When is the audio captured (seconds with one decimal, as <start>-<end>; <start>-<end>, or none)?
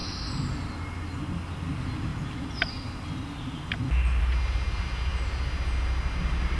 0.0-6.6